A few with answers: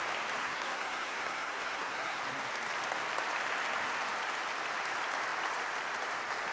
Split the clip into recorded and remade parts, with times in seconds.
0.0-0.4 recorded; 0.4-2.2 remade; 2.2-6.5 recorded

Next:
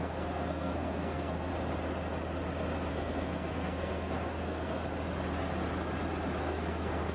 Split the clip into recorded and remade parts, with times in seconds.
0.0-1.5 remade; 1.5-2.9 recorded; 2.9-4.8 remade; 4.8-6.4 recorded; 6.4-7.1 remade

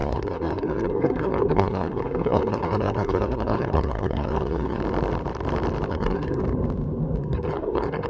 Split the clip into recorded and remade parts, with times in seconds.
0.0-4.8 remade; 4.8-5.9 recorded; 5.9-6.4 remade; 6.4-7.2 recorded; 7.2-8.1 remade

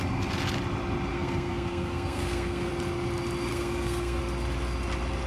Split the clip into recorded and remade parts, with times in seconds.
0.0-1.1 recorded; 1.1-2.7 remade; 2.7-3.5 recorded; 3.5-4.2 remade; 4.2-5.3 recorded

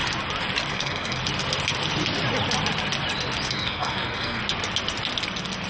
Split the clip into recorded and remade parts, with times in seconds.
0.0-0.7 recorded; 0.7-1.2 remade; 1.2-3.5 recorded; 3.5-4.4 remade; 4.4-5.7 recorded

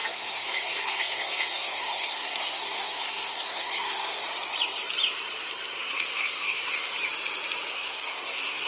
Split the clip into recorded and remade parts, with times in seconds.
0.0-4.2 remade; 4.2-5.8 recorded; 5.8-6.9 remade; 6.9-7.7 recorded; 7.7-8.7 remade